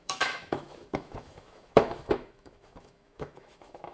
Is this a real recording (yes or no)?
no